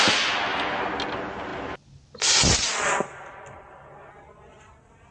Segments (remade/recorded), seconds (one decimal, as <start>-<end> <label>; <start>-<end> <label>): 0.0-5.1 recorded